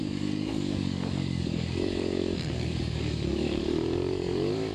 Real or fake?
fake